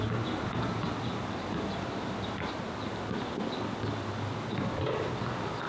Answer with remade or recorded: recorded